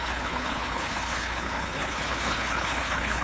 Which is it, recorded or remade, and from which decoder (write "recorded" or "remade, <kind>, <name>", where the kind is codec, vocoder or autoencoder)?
remade, codec, HILCodec